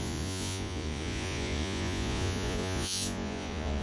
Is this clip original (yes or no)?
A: no